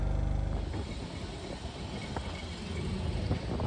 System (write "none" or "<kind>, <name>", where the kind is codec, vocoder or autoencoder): none